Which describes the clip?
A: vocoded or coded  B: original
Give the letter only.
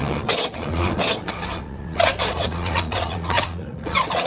A